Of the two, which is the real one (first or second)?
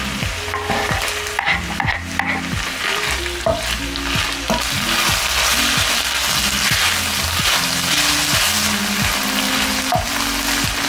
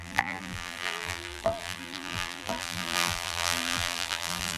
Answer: first